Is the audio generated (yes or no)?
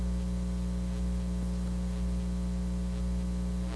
no